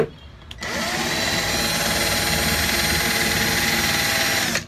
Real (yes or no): yes